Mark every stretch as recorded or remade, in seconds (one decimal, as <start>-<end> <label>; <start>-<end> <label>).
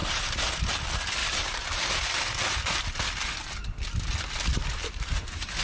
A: 0.0-0.5 remade; 0.5-1.2 recorded; 1.2-1.9 remade; 1.9-4.5 recorded; 4.5-5.1 remade; 5.1-5.6 recorded